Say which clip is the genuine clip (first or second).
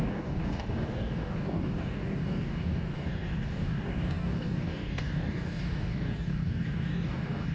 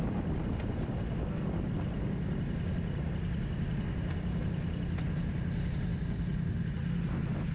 second